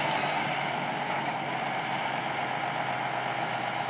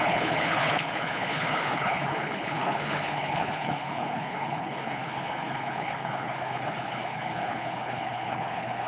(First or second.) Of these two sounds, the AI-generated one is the second